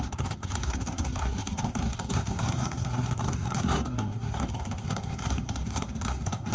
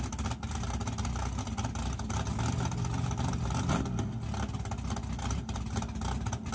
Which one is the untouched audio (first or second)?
second